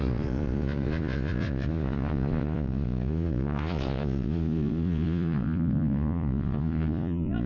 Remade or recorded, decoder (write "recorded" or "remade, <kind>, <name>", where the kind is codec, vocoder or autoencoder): remade, vocoder, Vocos